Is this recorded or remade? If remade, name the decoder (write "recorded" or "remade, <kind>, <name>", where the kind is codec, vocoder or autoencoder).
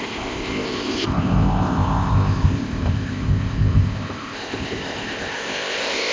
remade, codec, ZipCodec